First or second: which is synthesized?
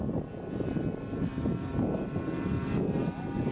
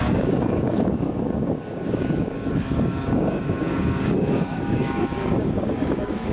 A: second